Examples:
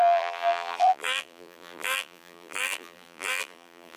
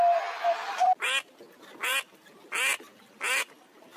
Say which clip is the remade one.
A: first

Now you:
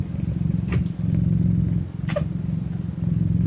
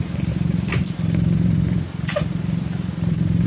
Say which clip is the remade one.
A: second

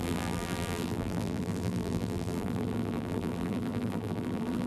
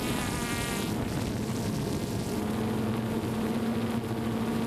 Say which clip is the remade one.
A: first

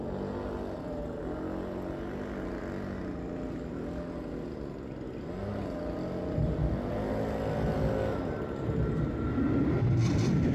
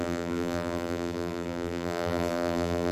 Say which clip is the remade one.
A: second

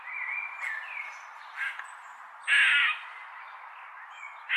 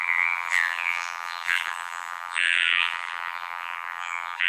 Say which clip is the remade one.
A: second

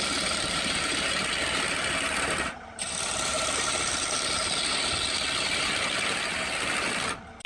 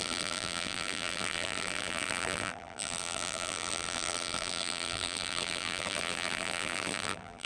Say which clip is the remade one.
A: second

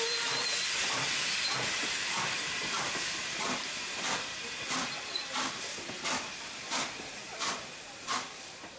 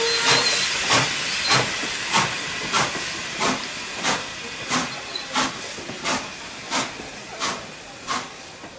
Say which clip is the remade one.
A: first